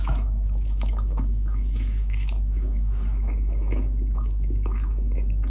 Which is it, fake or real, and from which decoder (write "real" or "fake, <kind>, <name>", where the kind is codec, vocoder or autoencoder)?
fake, autoencoder, DAC-VAE